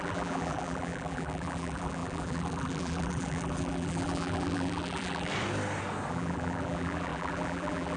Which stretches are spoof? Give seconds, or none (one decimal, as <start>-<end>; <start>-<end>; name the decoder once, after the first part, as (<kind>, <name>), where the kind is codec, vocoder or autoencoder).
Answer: 0.0-5.3 (vocoder, BigVGAN v2); 6.1-8.0